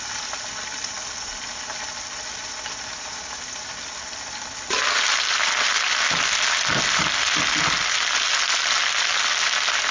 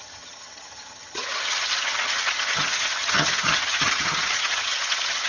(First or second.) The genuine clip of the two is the first